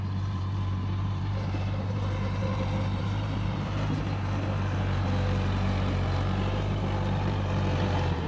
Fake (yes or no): yes